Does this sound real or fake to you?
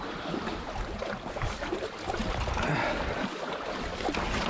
real